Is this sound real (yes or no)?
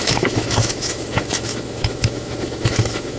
no